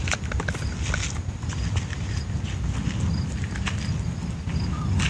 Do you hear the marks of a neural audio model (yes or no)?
no